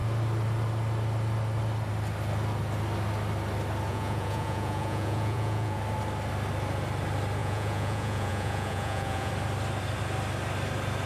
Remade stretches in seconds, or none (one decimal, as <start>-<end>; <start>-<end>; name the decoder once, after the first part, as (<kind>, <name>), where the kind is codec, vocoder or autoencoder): 3.9-5.8 (vocoder, Vocos); 7.4-9.3